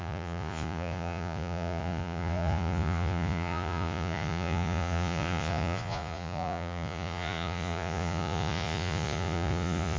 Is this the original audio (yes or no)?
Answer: no